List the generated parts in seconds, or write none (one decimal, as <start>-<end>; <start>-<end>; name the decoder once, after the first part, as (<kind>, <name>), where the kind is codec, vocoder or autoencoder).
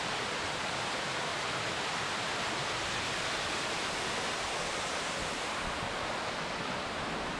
none